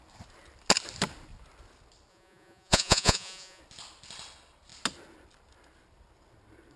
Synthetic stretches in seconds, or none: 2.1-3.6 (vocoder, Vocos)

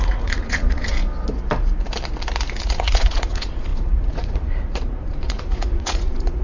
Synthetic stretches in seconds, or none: 0.0-1.0 (vocoder, Vocos); 2.6-6.4

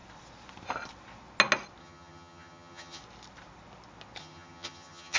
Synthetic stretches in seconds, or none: 1.8-3.0 (vocoder, HiFi-GAN); 4.2-5.2

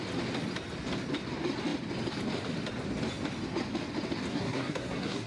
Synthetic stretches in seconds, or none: 4.3-5.3 (codec, SNAC)